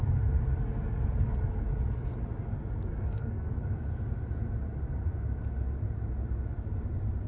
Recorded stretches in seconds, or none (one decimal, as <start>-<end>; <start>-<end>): 0.0-2.9; 3.5-7.3